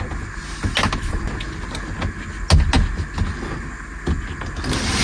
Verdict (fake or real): real